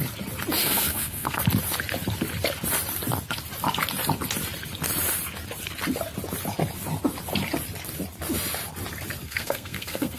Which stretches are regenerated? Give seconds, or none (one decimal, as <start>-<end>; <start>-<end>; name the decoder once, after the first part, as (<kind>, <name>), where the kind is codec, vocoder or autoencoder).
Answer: 0.6-1.4 (codec, SNAC); 9.2-10.2